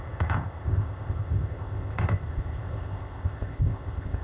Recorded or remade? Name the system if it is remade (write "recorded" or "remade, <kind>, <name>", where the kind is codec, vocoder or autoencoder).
remade, codec, ZipCodec